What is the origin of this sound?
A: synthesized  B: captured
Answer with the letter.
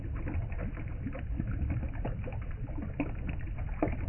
B